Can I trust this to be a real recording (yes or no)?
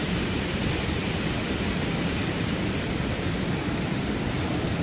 yes